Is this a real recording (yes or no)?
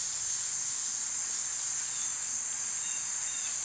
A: yes